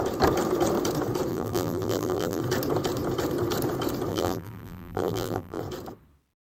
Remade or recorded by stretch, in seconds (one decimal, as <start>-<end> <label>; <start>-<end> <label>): 0.0-1.3 recorded; 1.3-2.4 remade; 2.4-4.1 recorded; 4.1-5.6 remade; 5.6-6.5 recorded